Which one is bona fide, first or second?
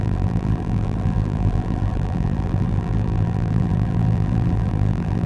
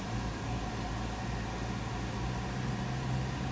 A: second